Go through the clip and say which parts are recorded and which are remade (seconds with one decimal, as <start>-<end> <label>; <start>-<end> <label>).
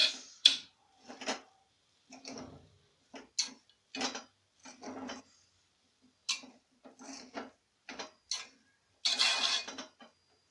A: 0.0-1.5 remade; 1.5-6.2 recorded; 6.2-6.8 remade; 6.8-10.5 recorded